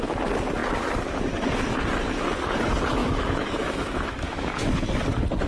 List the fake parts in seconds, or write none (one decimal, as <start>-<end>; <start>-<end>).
3.0-4.6